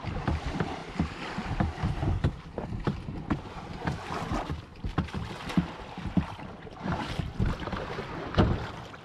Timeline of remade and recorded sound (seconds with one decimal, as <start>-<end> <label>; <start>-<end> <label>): 0.0-9.0 recorded